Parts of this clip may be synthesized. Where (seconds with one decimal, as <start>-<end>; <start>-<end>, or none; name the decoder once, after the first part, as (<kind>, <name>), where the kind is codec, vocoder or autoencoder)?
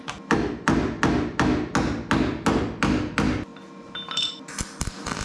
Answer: none